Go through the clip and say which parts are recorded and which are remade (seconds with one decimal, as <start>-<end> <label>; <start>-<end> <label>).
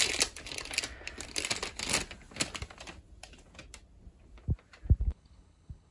0.0-5.1 recorded; 5.1-5.9 remade